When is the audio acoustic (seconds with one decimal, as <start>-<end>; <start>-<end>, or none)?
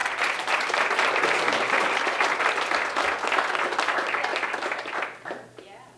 0.0-6.0